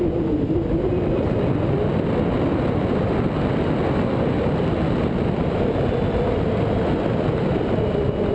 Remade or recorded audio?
recorded